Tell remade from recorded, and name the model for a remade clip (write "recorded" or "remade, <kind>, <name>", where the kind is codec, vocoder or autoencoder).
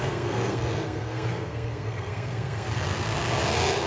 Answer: remade, codec, SNAC